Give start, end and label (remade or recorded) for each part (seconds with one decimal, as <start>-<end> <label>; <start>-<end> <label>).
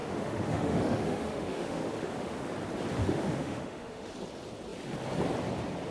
0.0-2.5 remade; 2.5-3.0 recorded; 3.0-4.1 remade; 4.1-5.9 recorded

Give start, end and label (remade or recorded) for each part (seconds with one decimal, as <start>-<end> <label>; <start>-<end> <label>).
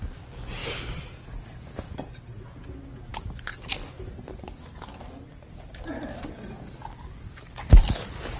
0.0-8.4 recorded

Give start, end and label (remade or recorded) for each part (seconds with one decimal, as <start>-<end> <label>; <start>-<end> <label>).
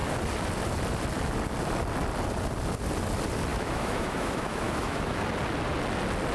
0.0-3.5 recorded; 3.5-5.2 remade; 5.2-6.3 recorded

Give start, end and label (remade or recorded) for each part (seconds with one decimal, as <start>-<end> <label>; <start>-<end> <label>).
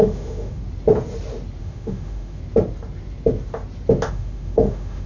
0.0-0.6 remade; 0.6-1.6 recorded; 1.6-2.4 remade; 2.4-4.1 recorded; 4.1-5.1 remade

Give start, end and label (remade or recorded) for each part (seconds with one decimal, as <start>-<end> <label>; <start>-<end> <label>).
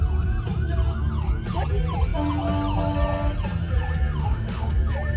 0.0-4.2 recorded; 4.2-4.7 remade; 4.7-5.2 recorded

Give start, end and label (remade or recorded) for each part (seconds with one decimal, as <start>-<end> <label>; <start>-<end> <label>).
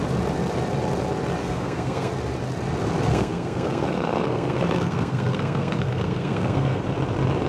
0.0-1.4 recorded; 1.4-2.1 remade; 2.1-3.1 recorded; 3.1-6.8 remade; 6.8-7.5 recorded